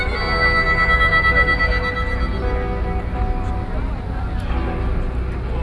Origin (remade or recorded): recorded